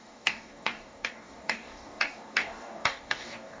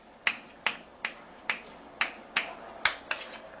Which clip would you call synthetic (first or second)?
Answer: first